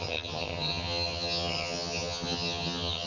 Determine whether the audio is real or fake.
fake